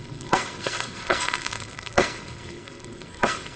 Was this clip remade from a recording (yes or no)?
yes